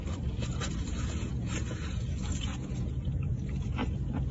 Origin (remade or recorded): remade